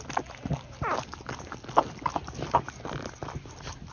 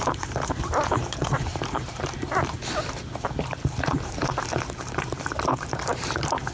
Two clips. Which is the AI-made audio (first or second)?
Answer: second